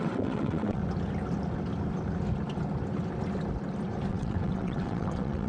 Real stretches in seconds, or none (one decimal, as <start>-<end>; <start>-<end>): 0.8-4.1